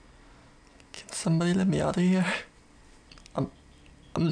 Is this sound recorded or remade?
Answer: recorded